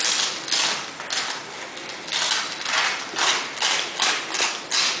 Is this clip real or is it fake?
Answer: real